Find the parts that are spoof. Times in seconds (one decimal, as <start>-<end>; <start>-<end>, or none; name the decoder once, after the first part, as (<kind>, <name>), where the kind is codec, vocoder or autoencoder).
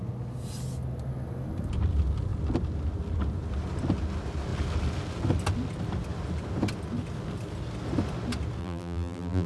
8.6-9.5 (vocoder, BigVGAN v2)